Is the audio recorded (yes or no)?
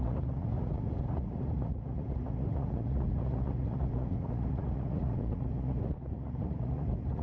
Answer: no